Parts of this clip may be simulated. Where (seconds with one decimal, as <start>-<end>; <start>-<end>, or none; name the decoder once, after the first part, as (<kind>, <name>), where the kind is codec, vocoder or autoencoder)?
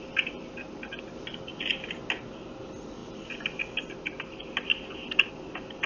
none